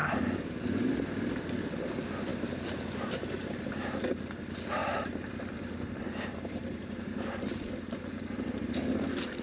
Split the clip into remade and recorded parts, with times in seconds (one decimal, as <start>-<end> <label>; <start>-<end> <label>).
0.0-2.3 recorded; 2.3-3.7 remade; 3.7-4.8 recorded; 4.8-8.0 remade; 8.0-9.4 recorded